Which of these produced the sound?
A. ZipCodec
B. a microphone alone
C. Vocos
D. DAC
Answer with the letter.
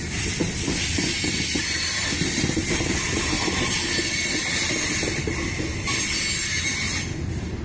B